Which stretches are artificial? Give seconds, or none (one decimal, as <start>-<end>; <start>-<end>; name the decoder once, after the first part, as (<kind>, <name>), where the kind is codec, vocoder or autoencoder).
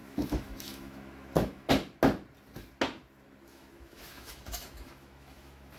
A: 0.0-1.7 (autoencoder, DAC-VAE); 3.5-5.8